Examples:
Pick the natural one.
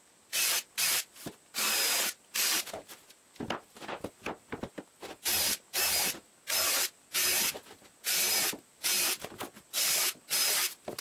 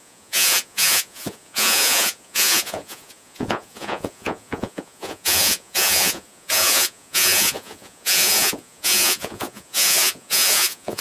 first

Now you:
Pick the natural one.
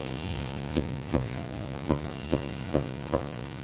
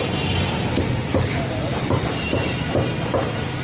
second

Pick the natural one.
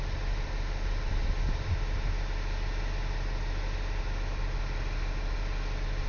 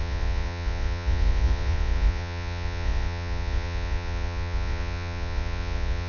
first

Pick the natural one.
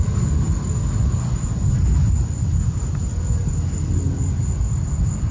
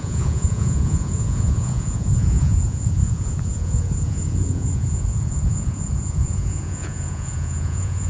first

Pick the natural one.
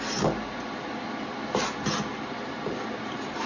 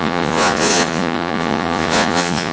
first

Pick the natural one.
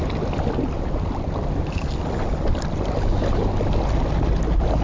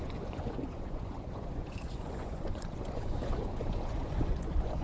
first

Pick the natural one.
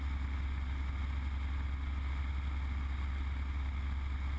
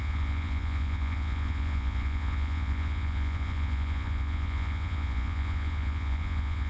first